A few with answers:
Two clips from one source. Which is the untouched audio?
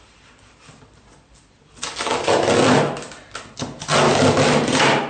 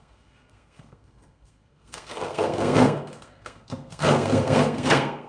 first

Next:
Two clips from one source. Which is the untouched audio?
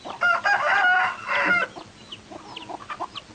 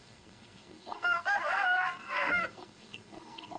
first